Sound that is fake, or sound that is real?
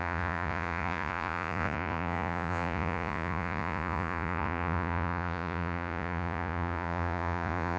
fake